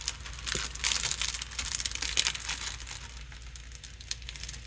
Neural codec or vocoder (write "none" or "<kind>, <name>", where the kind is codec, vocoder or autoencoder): none